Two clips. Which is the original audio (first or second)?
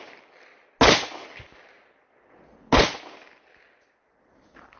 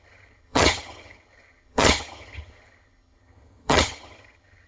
first